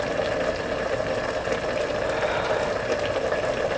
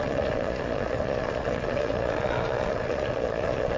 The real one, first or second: first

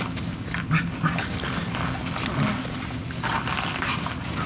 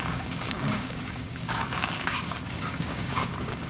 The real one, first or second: first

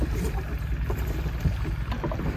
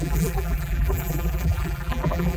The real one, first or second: first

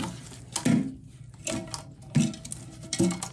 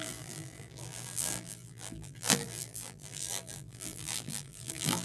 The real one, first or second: first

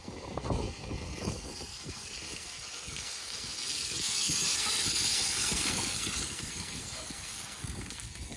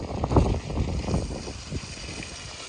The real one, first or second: second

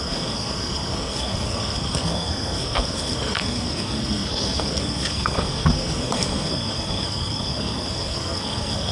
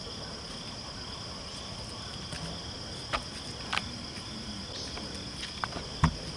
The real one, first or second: second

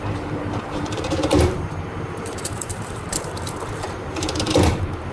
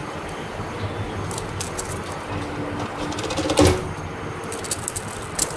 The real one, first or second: second